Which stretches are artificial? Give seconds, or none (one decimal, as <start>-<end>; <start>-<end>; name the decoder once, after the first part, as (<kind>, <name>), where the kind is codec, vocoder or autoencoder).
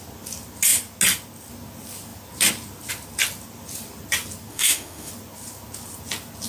4.5-5.1 (autoencoder, DAC-VAE)